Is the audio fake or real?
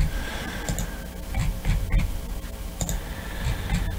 real